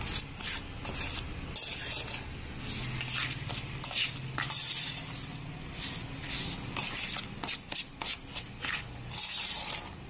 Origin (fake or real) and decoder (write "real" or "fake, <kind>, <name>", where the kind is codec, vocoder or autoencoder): real